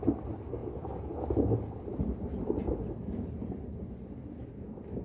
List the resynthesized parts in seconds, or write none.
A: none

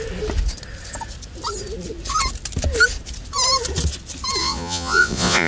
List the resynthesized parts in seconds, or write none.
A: 4.4-5.5 (vocoder, Vocos)

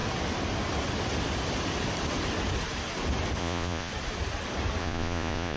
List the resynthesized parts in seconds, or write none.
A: 3.4-3.9 (vocoder, Vocos); 4.8-5.6

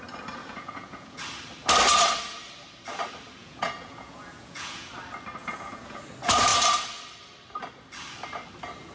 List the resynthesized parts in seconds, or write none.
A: 0.4-1.2 (vocoder, Vocos); 3.4-4.9; 5.4-6.0

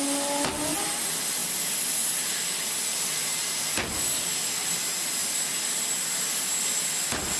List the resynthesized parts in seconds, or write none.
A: none

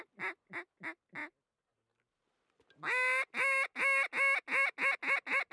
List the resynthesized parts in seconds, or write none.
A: none

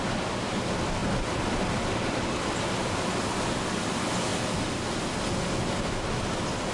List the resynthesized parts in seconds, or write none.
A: none

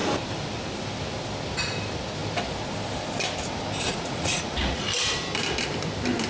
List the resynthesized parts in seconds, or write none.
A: 3.9-4.8 (vocoder, Vocos)